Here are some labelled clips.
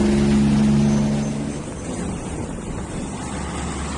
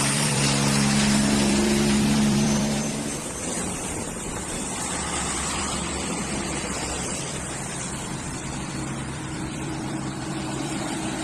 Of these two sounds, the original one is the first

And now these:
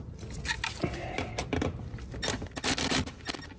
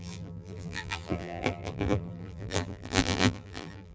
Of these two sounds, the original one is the first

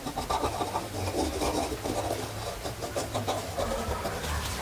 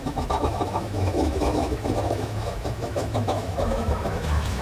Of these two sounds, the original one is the first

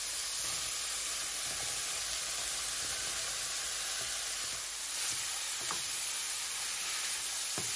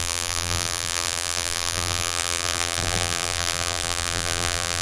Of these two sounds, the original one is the first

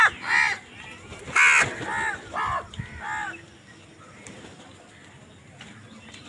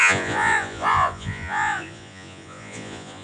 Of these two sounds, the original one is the first